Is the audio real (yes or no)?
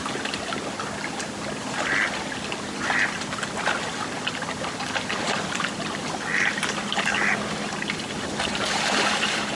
yes